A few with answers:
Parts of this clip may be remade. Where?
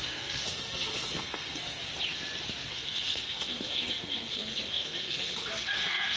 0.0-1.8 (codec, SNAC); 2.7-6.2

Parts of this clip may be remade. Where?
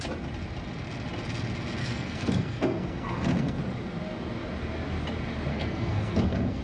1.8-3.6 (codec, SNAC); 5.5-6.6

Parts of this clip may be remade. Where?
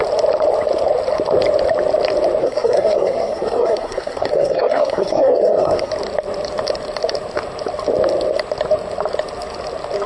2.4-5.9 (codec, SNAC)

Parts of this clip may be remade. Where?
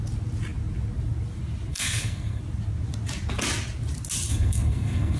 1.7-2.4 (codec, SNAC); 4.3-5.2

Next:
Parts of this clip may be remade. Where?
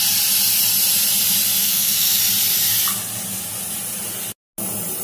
1.6-2.2 (codec, SNAC)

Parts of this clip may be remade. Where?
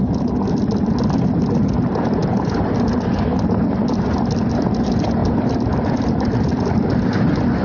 none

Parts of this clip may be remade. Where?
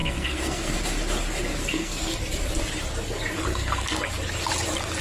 0.0-0.8 (codec, SNAC); 1.6-2.2; 3.5-4.1